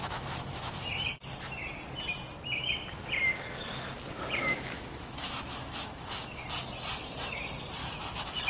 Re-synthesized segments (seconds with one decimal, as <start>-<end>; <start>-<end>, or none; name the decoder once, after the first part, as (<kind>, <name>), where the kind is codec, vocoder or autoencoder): 0.0-0.9 (autoencoder, DAC-VAE); 4.4-6.4; 7.8-8.5